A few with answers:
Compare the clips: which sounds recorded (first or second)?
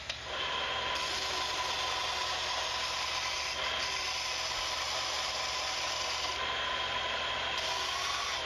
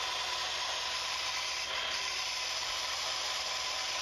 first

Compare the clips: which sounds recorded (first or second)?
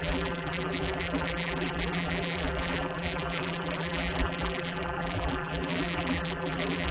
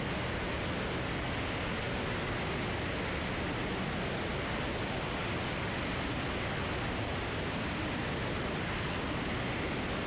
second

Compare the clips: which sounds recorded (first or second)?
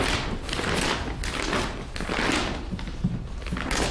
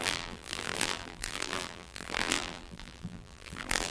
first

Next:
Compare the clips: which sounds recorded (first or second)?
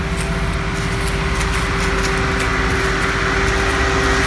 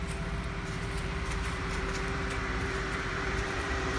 first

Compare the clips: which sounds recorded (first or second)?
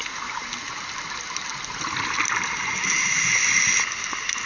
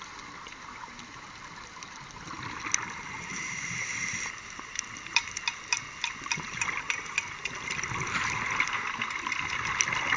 first